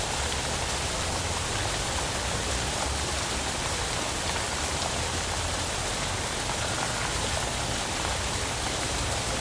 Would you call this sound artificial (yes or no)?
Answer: no